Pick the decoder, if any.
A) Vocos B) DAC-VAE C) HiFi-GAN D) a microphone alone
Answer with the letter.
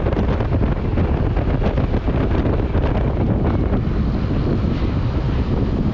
D